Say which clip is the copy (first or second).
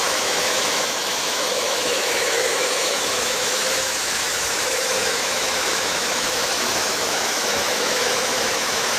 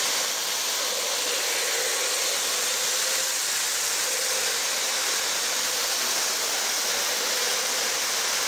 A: first